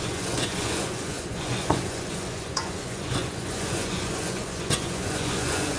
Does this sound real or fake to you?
fake